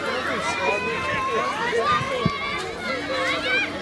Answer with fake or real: real